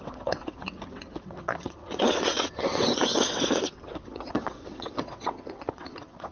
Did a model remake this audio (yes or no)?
yes